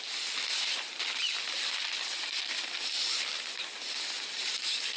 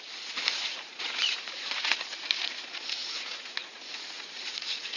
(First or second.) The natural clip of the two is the first